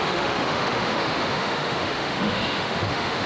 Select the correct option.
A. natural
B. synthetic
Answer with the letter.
B